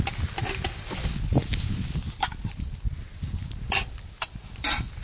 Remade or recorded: recorded